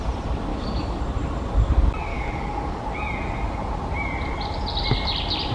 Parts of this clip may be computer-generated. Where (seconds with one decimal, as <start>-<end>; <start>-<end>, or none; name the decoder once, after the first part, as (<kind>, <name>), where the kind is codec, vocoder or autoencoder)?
0.5-1.0 (codec, DAC); 2.1-2.8